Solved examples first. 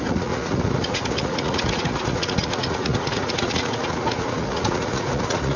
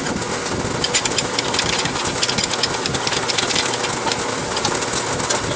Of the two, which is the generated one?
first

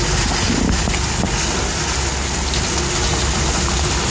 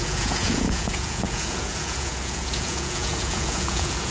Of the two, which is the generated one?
second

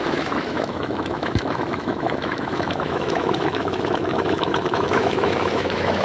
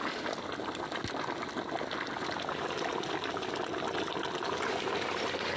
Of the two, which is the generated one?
first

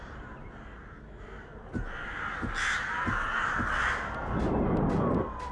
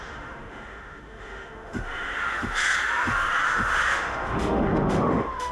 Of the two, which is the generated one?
second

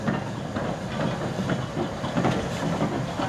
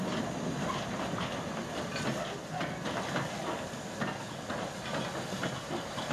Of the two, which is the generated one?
first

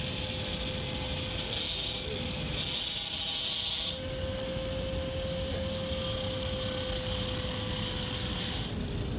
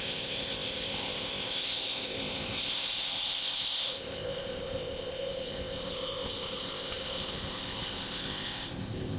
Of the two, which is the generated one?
second